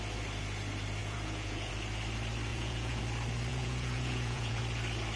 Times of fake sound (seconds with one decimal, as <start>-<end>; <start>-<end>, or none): 1.0-1.7; 2.5-3.0; 3.5-4.6